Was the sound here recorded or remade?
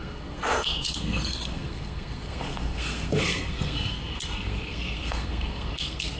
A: remade